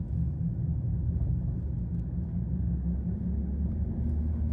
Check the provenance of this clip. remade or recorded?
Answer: recorded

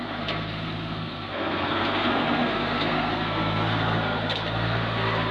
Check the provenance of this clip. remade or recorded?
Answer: remade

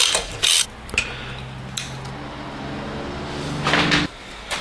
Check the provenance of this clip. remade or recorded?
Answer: recorded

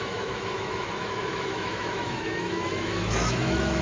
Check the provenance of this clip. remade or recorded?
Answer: remade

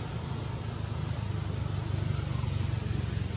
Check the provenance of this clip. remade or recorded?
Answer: recorded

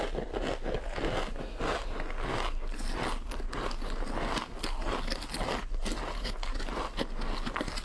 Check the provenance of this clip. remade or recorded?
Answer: recorded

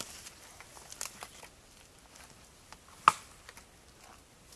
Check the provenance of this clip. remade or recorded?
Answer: recorded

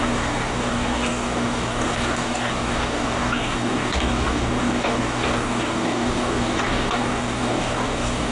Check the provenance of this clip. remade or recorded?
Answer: remade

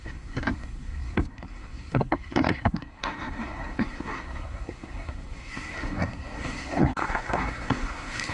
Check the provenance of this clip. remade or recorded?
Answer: remade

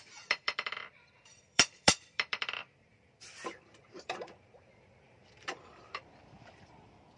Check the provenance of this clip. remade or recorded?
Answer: remade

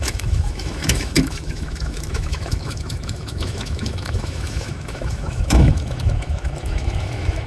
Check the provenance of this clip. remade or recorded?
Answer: remade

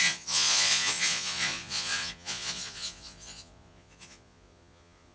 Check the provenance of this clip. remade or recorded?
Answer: remade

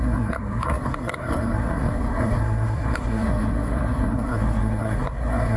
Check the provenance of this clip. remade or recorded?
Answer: remade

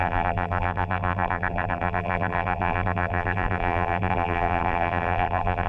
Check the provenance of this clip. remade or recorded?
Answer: remade